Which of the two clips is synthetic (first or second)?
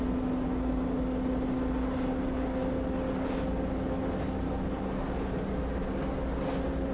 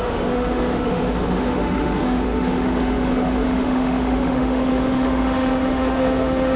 second